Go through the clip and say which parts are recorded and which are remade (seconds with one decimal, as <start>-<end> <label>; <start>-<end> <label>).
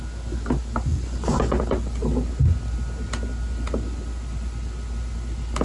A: 0.0-0.9 recorded; 0.9-1.6 remade; 1.6-5.6 recorded